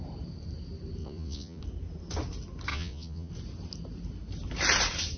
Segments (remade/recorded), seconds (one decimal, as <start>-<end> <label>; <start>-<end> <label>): 0.0-1.0 recorded; 1.0-1.6 remade; 1.6-2.7 recorded; 2.7-3.3 remade; 3.3-5.2 recorded